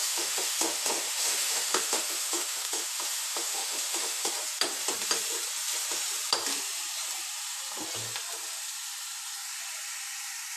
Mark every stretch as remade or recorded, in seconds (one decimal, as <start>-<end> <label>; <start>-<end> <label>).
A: 0.0-4.3 remade; 4.3-10.6 recorded